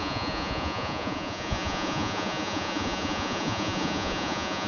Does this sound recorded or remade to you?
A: remade